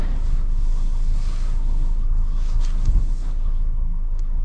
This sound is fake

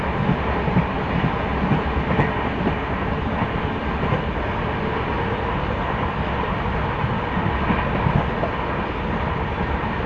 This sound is real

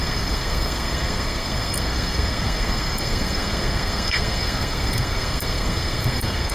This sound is fake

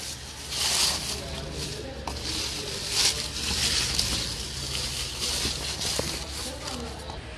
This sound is real